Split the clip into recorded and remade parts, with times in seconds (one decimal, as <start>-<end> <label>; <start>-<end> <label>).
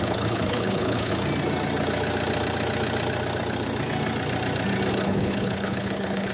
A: 0.0-1.1 remade; 1.1-4.9 recorded; 4.9-6.3 remade